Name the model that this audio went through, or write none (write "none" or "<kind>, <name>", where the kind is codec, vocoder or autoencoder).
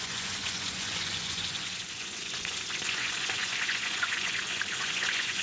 vocoder, Vocos